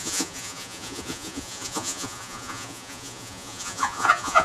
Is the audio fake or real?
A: fake